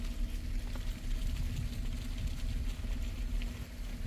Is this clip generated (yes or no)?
no